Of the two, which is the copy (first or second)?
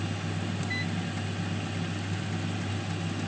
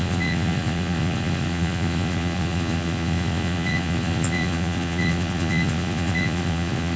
second